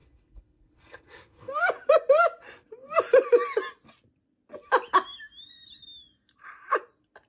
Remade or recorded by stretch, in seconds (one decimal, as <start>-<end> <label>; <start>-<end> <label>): 0.0-1.6 remade; 1.6-7.3 recorded